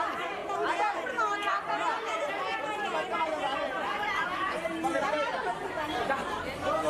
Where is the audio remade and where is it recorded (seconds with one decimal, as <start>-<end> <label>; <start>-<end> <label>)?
0.0-0.4 remade; 0.4-3.2 recorded; 3.2-6.9 remade